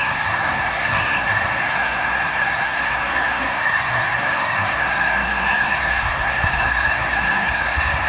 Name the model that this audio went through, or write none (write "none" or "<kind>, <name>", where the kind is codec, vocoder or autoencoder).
codec, SNAC